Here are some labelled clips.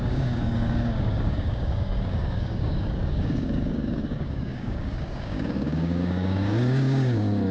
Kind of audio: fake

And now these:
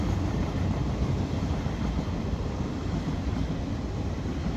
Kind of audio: real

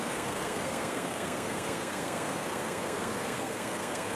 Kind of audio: fake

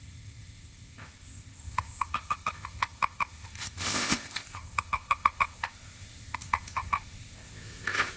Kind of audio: fake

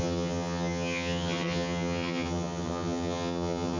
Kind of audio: fake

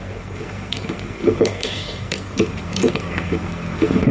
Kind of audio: fake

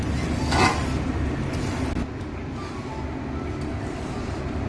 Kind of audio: real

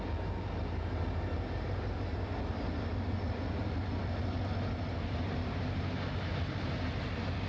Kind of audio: real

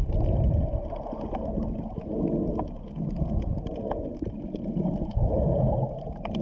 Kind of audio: real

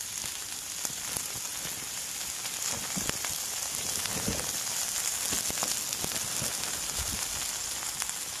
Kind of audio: real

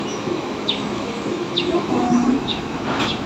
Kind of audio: fake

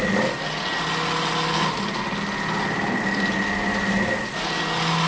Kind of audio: real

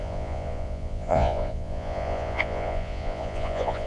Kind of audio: fake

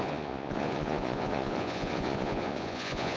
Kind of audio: fake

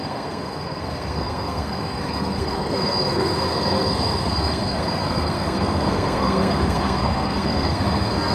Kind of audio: fake